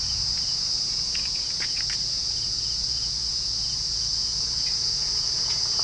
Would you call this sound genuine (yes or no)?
no